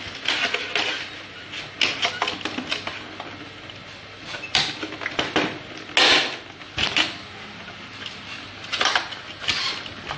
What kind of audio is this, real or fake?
real